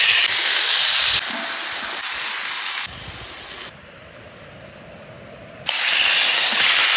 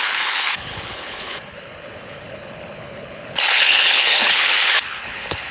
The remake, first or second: second